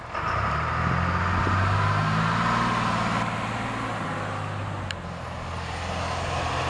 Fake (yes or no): no